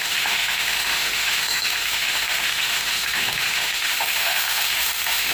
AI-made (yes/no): yes